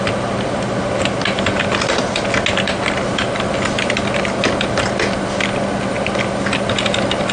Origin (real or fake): real